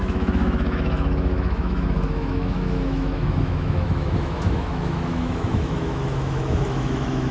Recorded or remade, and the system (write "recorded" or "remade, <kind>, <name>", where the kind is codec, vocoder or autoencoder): remade, autoencoder, DAC-VAE